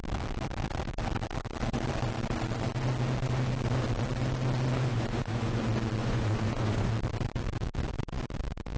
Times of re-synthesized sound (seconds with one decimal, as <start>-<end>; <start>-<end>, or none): 4.9-5.6; 6.0-6.9